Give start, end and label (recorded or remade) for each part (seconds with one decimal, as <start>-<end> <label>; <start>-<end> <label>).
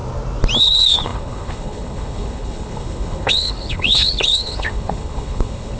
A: 0.0-0.6 recorded; 0.6-5.8 remade